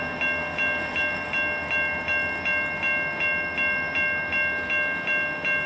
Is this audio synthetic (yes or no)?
no